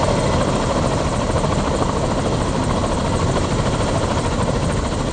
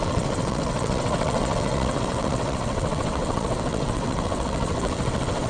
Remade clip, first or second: second